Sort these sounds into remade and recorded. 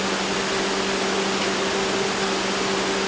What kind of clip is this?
recorded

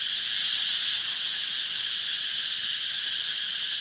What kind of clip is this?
recorded